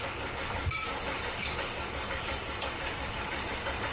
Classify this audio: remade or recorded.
remade